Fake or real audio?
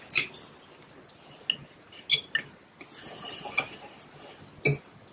real